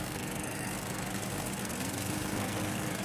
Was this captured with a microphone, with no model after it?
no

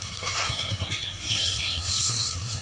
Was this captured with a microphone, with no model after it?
no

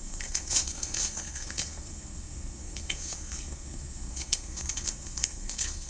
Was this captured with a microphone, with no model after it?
no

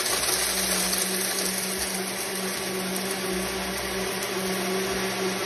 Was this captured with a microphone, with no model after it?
yes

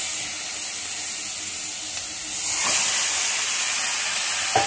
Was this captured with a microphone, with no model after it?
yes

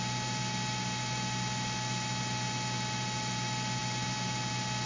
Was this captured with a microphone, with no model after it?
yes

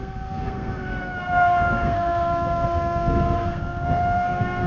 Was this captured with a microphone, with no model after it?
no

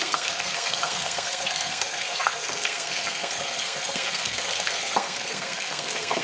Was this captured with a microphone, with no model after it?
no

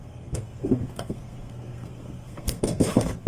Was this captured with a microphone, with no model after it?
no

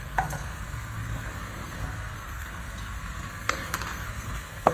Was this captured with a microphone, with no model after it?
no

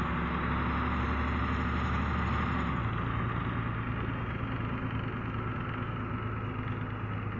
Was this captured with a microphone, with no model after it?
yes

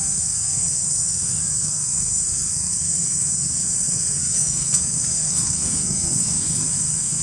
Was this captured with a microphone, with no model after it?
no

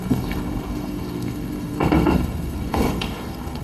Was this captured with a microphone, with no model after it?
no